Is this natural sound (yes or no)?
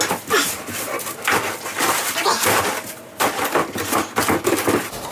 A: yes